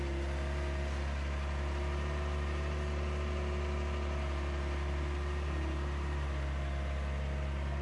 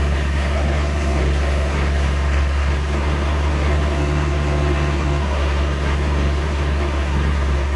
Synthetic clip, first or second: second